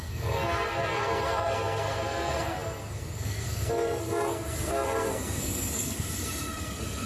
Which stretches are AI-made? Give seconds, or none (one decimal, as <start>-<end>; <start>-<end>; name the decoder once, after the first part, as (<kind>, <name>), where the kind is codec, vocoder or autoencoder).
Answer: 0.0-7.1 (codec, SNAC)